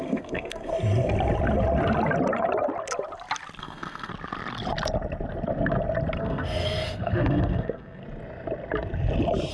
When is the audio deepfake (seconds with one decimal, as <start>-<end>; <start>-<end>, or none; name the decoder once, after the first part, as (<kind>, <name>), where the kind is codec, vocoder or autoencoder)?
0.0-0.7 (codec, SNAC); 3.6-4.1; 6.2-8.0